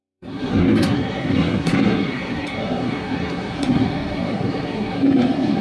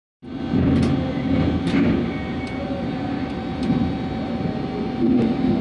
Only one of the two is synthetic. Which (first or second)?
first